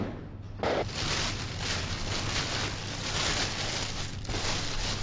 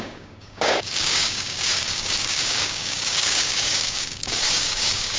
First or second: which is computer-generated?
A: second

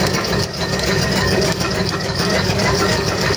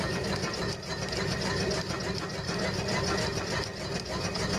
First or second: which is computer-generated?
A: first